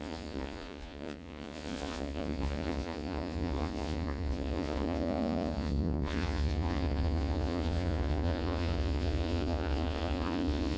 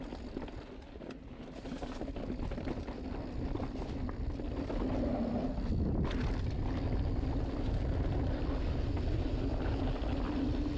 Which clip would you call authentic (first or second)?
second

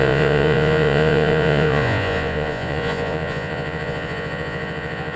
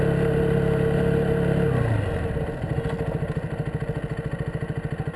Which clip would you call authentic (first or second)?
second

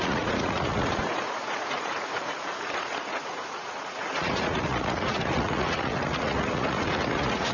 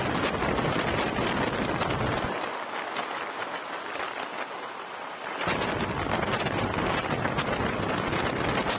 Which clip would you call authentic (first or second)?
second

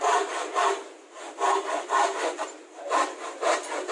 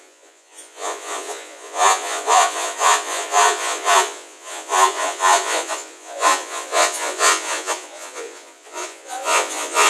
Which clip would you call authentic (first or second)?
first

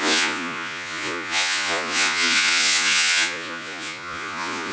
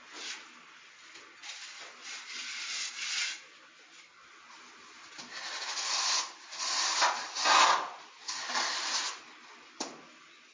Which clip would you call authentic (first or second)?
second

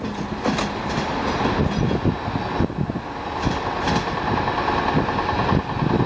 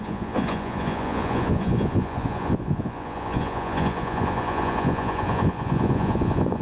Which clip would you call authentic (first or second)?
first